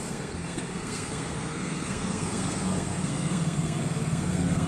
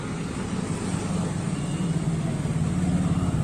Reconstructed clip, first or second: first